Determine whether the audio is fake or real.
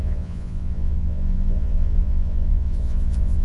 fake